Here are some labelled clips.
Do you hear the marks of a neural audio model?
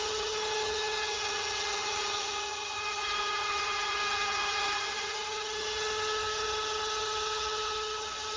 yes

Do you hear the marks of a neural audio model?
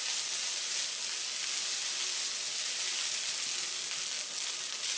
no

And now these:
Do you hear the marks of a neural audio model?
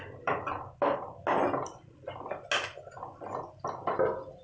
no